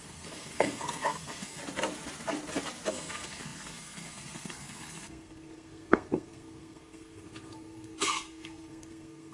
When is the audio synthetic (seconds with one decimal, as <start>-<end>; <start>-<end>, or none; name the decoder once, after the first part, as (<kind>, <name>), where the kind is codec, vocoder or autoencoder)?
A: 0.0-1.6 (codec, SNAC); 2.9-9.3